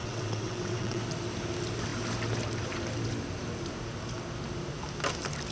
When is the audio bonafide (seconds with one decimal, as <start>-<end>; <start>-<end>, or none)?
1.0-5.5